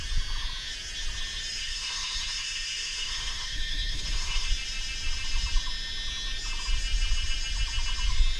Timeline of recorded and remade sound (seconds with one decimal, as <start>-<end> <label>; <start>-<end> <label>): 0.0-1.6 recorded; 1.6-4.5 remade; 4.5-8.4 recorded